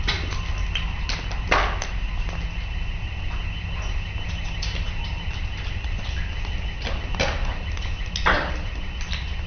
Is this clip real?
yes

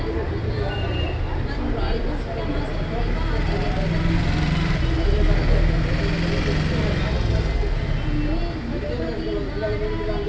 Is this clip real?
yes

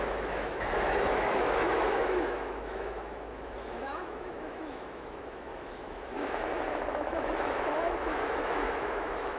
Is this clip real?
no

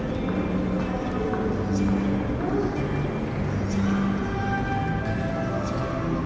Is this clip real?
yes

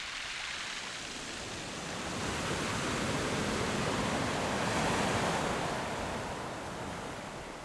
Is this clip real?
yes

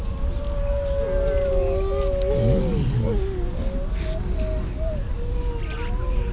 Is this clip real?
yes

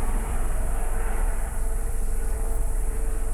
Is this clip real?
no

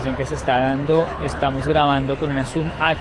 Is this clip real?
no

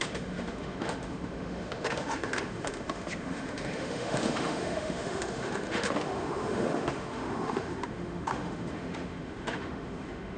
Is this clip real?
no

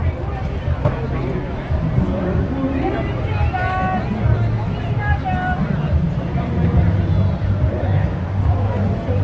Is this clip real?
yes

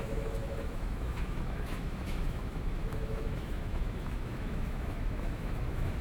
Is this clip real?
no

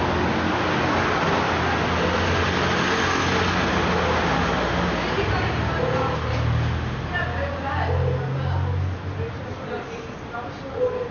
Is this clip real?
yes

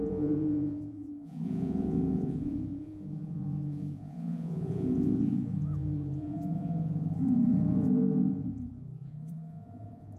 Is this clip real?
no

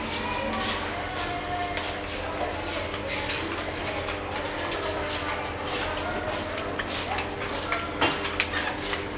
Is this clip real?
yes